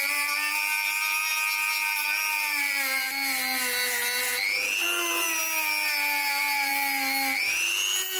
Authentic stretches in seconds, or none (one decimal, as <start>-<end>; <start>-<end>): 0.0-8.2

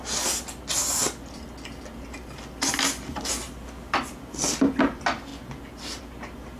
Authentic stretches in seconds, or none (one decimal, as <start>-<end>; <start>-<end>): 0.0-6.6